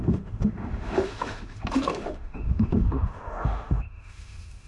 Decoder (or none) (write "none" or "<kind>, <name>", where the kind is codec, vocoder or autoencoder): autoencoder, DAC-VAE